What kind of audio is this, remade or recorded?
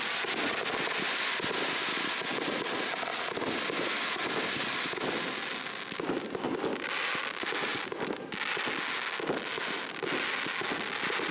recorded